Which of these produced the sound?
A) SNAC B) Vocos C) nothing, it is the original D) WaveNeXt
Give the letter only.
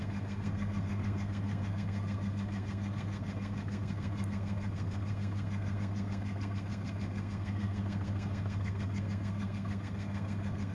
A